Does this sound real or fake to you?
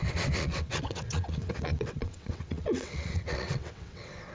fake